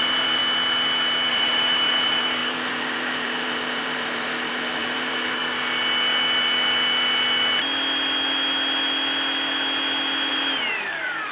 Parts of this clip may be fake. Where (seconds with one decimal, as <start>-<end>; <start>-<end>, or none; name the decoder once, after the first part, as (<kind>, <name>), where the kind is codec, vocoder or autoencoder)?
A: 0.0-0.4 (vocoder, BigVGAN v2); 1.3-5.4; 10.3-11.3